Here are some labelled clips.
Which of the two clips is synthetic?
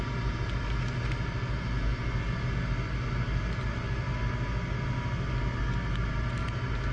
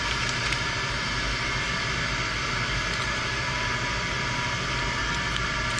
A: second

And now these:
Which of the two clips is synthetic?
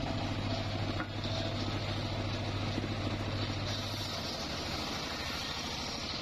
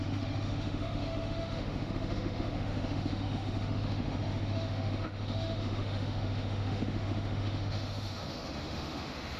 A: second